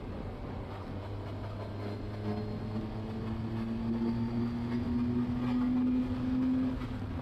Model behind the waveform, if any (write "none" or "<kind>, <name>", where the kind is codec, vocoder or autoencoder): none